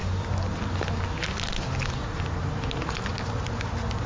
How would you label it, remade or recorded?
recorded